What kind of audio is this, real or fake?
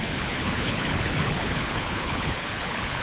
fake